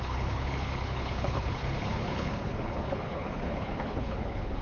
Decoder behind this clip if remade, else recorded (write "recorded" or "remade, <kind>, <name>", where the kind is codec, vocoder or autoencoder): remade, codec, HILCodec